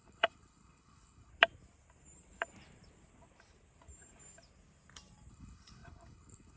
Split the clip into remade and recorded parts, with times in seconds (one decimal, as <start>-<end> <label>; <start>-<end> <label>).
0.0-1.3 remade; 1.3-5.3 recorded; 5.3-6.6 remade